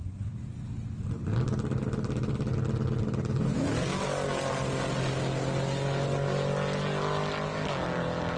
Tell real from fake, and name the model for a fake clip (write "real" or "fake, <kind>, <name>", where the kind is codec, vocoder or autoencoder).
real